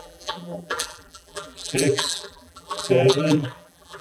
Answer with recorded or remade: remade